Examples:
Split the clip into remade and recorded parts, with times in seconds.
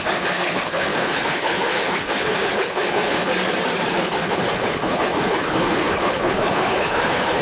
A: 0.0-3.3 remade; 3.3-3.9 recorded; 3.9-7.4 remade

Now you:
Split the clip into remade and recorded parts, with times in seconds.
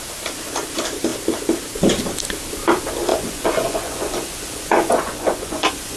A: 0.0-3.1 recorded; 3.1-6.0 remade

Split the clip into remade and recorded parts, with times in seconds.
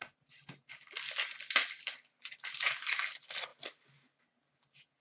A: 0.0-5.0 recorded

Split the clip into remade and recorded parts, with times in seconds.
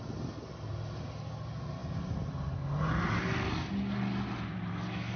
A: 0.0-5.2 recorded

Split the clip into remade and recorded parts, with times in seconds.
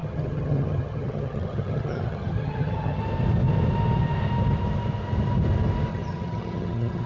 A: 0.0-3.0 remade; 3.0-5.9 recorded; 5.9-7.1 remade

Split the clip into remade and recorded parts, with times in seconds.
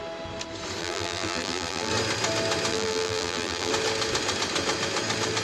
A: 0.0-0.8 recorded; 0.8-1.9 remade; 1.9-2.7 recorded; 2.7-3.7 remade; 3.7-5.4 recorded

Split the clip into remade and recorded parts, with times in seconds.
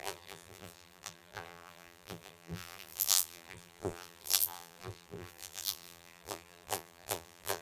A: 0.0-7.6 remade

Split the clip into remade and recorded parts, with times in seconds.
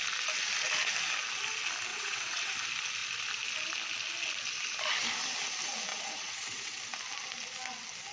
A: 0.0-1.9 recorded; 1.9-2.5 remade; 2.5-5.9 recorded; 5.9-6.8 remade; 6.8-8.1 recorded